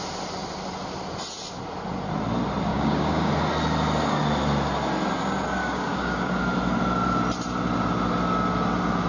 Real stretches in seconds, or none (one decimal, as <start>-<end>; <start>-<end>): 0.0-2.7; 3.3-5.6; 6.4-9.1